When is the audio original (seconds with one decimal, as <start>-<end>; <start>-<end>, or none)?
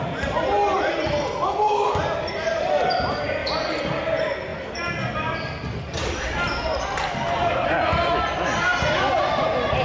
0.0-9.8